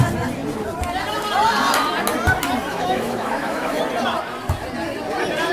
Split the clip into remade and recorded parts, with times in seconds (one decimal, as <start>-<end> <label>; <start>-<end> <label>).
0.0-2.7 recorded; 2.7-3.8 remade; 3.8-5.5 recorded